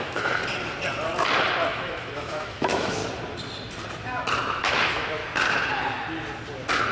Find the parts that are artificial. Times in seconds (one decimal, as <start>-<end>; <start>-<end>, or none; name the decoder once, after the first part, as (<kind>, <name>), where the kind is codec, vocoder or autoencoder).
0.0-0.4 (autoencoder, DAC-VAE); 1.7-3.0; 4.6-5.2